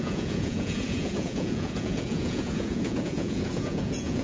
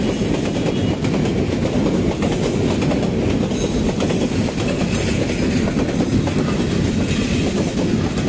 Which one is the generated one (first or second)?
first